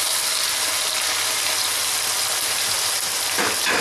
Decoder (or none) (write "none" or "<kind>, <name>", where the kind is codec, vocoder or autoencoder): none